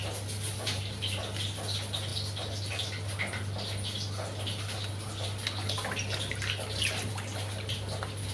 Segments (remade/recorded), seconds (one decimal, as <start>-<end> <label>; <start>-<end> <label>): 0.0-0.5 recorded; 0.5-1.2 remade; 1.2-8.3 recorded